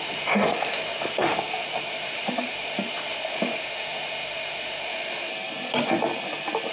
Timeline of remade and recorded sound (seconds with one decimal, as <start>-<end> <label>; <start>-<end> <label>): 0.0-5.3 remade; 5.3-6.7 recorded